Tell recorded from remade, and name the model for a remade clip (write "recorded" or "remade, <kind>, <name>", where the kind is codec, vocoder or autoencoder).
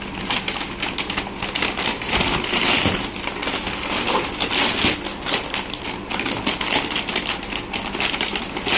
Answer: recorded